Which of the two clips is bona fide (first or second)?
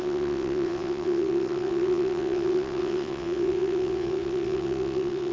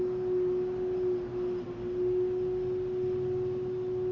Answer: second